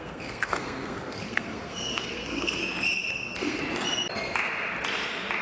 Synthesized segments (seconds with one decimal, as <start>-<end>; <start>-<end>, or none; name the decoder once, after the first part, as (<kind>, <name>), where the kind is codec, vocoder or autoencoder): 0.0-2.6 (codec, SNAC); 3.1-3.6